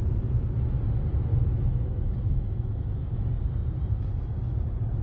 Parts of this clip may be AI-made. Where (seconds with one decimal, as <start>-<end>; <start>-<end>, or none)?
1.3-3.2